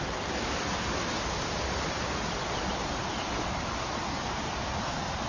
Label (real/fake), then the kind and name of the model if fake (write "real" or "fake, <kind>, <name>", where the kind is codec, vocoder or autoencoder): real